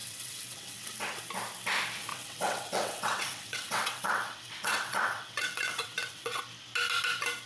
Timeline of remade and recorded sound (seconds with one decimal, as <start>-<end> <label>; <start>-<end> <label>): 0.0-1.2 remade; 1.2-2.1 recorded; 2.1-6.4 remade; 6.4-7.5 recorded

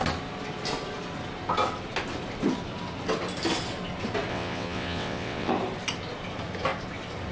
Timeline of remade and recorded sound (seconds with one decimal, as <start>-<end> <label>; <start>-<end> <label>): 0.0-4.3 recorded; 4.3-5.5 remade; 5.5-7.3 recorded